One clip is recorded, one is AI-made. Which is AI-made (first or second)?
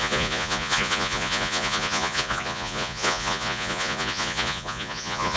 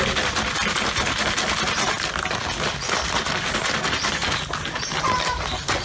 first